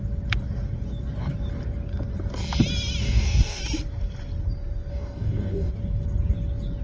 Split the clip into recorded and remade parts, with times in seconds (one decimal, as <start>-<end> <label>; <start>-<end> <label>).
0.0-3.0 recorded; 3.0-3.6 remade; 3.6-4.9 recorded; 4.9-5.7 remade; 5.7-6.8 recorded